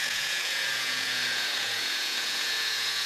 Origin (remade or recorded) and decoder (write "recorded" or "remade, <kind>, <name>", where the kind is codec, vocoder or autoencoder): remade, vocoder, Vocos